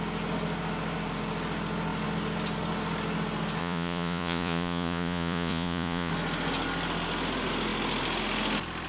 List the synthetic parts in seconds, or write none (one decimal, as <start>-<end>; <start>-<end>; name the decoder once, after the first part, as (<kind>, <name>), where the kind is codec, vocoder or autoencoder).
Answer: 3.6-6.1 (vocoder, Vocos)

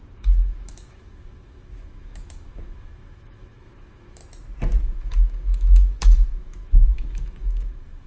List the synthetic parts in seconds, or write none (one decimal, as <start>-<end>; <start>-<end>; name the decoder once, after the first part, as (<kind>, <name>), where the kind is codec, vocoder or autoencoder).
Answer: 0.0-4.2 (autoencoder, DAC-VAE); 4.8-8.1

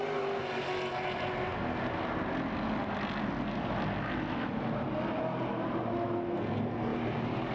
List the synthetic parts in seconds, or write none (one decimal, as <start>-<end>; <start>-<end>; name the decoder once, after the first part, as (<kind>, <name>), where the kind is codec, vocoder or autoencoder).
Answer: 6.9-7.5 (vocoder, BigVGAN v2)

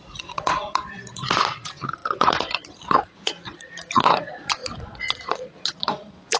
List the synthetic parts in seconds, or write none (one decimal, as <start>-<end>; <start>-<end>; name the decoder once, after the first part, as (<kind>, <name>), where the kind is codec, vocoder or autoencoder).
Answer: 0.0-6.4 (vocoder, Vocos)

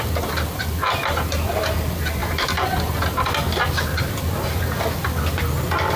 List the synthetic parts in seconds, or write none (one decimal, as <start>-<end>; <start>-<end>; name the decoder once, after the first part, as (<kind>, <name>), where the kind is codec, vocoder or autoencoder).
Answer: none

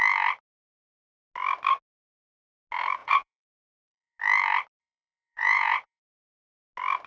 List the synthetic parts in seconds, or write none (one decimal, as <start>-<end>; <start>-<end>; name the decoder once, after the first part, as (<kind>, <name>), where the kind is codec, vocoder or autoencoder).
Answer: 3.0-4.2 (vocoder, Vocos); 4.8-6.0

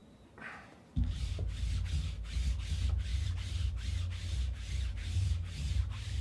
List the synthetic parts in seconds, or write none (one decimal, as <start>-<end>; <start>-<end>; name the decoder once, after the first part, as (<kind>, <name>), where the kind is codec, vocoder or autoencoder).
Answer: 0.0-1.3 (vocoder, BigVGAN v2); 3.1-3.8; 4.9-5.8